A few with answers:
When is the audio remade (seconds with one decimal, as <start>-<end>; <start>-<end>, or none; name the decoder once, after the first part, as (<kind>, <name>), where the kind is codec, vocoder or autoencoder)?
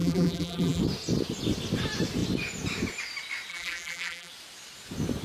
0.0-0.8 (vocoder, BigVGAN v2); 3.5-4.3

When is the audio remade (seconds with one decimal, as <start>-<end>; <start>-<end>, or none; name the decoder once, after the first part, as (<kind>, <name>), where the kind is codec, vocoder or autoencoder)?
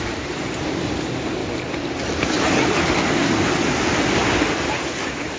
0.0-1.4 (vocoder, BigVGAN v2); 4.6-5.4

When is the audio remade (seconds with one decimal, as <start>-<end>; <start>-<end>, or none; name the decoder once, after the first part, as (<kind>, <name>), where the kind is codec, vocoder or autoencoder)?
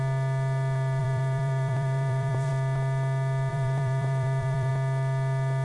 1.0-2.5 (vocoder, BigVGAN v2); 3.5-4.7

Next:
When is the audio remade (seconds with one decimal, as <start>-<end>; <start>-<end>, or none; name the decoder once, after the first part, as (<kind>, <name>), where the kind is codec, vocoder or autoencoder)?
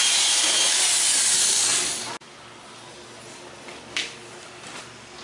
none